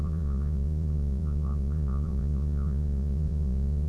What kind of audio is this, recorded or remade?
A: remade